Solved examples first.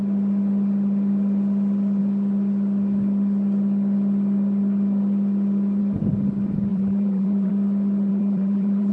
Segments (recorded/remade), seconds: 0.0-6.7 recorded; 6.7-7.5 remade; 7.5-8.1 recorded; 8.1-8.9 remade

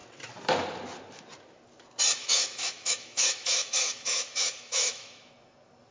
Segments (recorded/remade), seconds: 0.0-2.2 recorded; 2.2-5.3 remade; 5.3-5.9 recorded

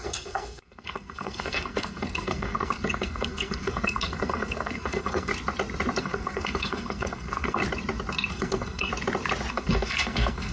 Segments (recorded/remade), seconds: 0.0-5.3 remade; 5.3-6.0 recorded; 6.0-7.6 remade; 7.6-8.3 recorded; 8.3-8.9 remade; 8.9-9.5 recorded; 9.5-10.5 remade

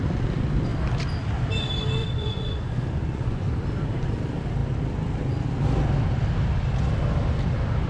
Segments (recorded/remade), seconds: 0.0-2.0 recorded; 2.0-3.6 remade; 3.6-7.9 recorded

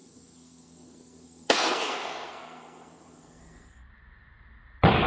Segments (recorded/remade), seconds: 0.0-3.9 remade; 3.9-5.1 recorded